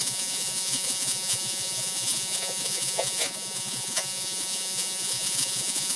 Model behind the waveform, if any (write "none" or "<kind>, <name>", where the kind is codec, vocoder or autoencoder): vocoder, Vocos